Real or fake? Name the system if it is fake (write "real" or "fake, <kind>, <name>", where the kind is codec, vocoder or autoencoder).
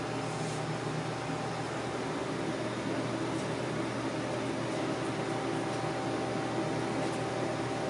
real